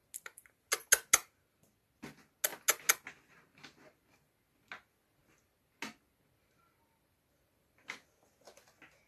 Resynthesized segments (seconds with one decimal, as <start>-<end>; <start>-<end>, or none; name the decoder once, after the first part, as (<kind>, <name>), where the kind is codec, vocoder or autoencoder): none